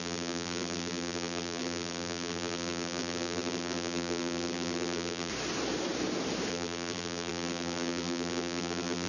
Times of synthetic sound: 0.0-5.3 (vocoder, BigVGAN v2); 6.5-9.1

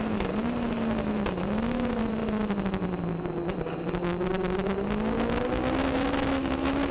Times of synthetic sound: none

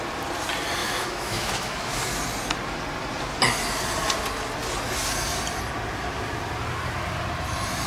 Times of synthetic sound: 0.8-2.0 (autoencoder, DAC-VAE)